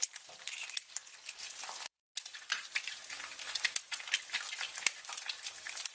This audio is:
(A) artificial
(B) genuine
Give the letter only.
B